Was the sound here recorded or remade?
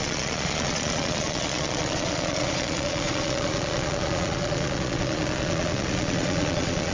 remade